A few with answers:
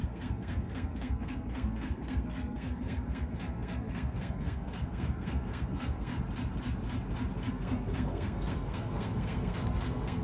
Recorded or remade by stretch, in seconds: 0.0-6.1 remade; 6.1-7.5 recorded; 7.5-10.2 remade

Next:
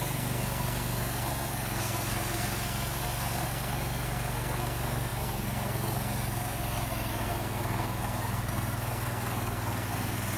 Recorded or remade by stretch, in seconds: 0.0-10.4 remade

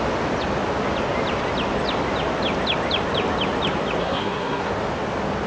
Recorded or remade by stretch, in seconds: 0.0-4.0 recorded; 4.0-4.7 remade; 4.7-5.5 recorded

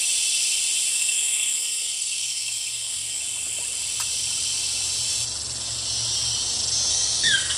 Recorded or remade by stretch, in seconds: 0.0-0.9 recorded; 0.9-3.2 remade; 3.2-6.9 recorded; 6.9-7.6 remade

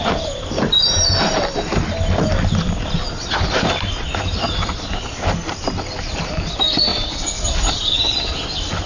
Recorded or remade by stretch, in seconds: 0.0-8.9 recorded

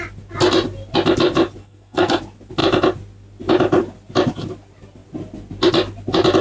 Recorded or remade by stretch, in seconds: 0.0-1.6 recorded; 1.6-2.2 remade; 2.2-6.4 recorded

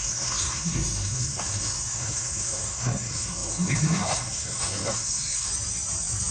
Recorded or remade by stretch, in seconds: 0.0-5.5 remade; 5.5-6.3 recorded

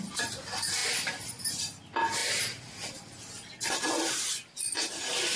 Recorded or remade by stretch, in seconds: 0.0-5.4 recorded